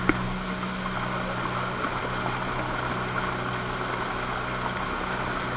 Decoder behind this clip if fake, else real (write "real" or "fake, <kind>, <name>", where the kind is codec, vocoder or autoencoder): real